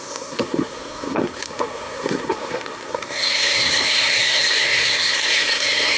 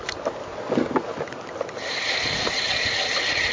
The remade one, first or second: first